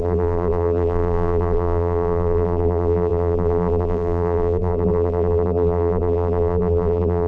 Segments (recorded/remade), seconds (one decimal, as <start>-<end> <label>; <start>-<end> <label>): 0.0-7.3 remade